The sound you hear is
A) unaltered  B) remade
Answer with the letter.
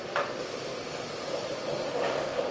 A